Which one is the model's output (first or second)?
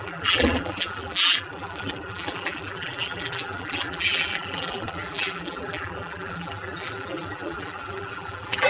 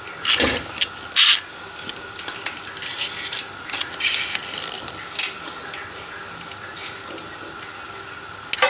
first